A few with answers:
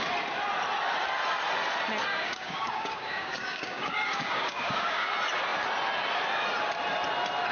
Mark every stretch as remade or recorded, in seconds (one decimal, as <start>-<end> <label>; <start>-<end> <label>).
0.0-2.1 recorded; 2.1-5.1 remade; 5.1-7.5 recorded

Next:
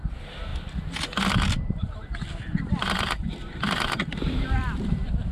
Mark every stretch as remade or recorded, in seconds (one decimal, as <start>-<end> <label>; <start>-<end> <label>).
0.0-0.5 remade; 0.5-1.3 recorded; 1.3-5.3 remade

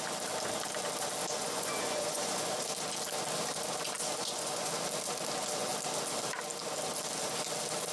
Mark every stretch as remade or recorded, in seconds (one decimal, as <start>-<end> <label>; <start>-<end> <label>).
0.0-1.4 recorded; 1.4-2.5 remade; 2.5-4.2 recorded; 4.2-4.7 remade; 4.7-7.9 recorded

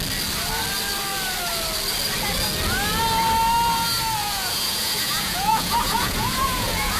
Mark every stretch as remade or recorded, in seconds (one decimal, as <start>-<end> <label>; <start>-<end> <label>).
0.0-4.2 recorded; 4.2-7.0 remade

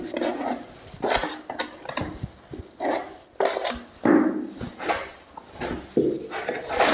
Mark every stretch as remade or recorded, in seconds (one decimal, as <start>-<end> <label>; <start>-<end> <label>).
0.0-6.9 recorded

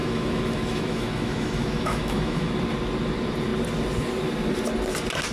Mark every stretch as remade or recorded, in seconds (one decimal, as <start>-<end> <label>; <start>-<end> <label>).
0.0-2.5 remade; 2.5-5.3 recorded

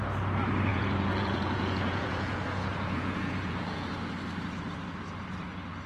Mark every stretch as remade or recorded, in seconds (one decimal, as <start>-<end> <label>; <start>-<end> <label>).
0.0-0.7 recorded; 0.7-3.9 remade; 3.9-5.9 recorded